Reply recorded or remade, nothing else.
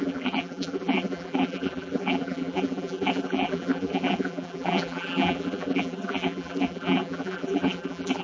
remade